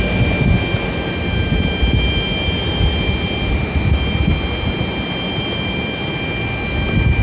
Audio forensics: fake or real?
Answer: real